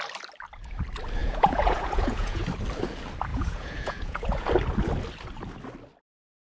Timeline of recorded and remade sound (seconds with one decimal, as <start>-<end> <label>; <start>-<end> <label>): 0.0-1.2 recorded; 1.2-2.4 remade; 2.4-3.3 recorded; 3.3-4.5 remade; 4.5-6.5 recorded